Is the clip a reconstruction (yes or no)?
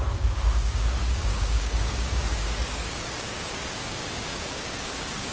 yes